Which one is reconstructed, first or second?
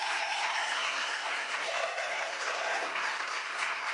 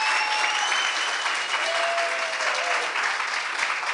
first